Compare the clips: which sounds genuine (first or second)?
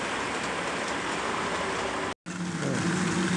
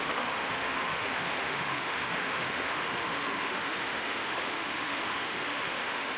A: first